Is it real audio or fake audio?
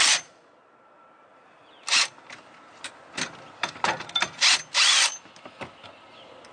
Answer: real